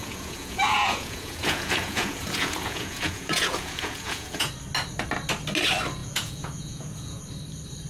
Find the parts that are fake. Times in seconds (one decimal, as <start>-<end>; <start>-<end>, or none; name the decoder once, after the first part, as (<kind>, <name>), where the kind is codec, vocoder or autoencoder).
0.0-4.5 (vocoder, Vocos); 6.0-7.2